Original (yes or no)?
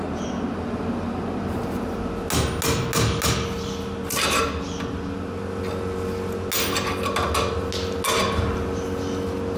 yes